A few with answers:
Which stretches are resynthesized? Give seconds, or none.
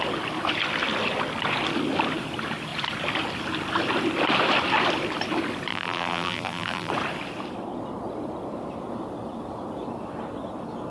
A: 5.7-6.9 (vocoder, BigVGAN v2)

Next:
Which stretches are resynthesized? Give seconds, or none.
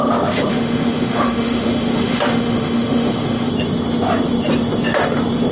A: 0.5-3.5 (autoencoder, DAC-VAE)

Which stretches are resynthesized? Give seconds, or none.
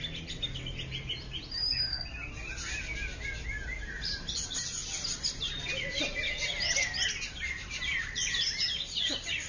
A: none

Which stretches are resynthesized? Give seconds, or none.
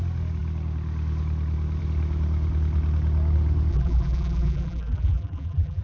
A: 3.7-5.8 (vocoder, BigVGAN v2)